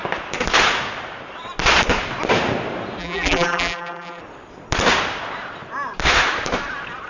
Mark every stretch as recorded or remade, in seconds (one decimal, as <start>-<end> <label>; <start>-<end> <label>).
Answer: 0.0-3.0 recorded; 3.0-4.2 remade; 4.2-7.1 recorded